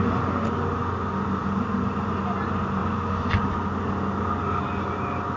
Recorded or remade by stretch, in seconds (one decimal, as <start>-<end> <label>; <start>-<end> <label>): 0.0-5.4 recorded